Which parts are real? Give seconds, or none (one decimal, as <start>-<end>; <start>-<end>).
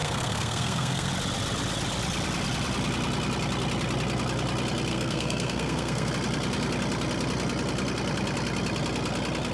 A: 1.1-4.9; 6.1-9.5